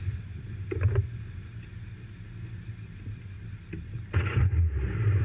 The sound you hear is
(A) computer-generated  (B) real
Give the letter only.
B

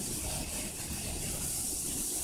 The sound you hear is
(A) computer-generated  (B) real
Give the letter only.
B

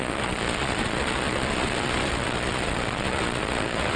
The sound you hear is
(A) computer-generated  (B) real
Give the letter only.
A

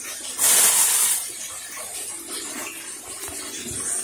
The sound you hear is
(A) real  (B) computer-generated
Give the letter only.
A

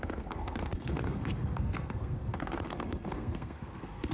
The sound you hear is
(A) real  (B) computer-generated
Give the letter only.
B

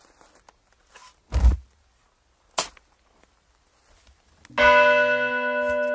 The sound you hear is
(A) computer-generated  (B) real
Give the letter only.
B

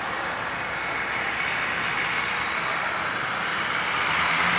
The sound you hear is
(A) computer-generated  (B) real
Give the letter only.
B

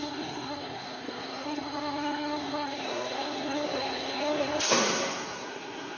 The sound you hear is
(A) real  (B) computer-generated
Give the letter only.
B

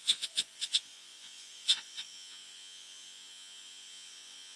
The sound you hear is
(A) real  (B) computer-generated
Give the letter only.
B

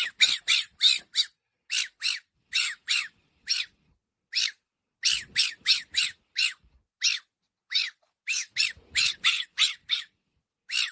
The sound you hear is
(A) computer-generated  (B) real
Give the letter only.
B